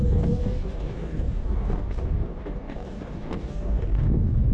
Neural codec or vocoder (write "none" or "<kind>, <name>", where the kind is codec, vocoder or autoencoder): codec, DAC